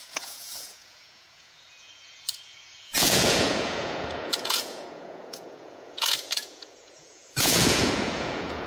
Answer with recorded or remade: remade